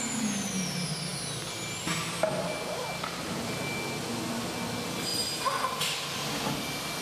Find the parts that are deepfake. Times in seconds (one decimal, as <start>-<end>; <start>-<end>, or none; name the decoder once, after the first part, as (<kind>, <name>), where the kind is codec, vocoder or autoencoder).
none